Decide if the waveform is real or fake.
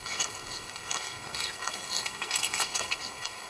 fake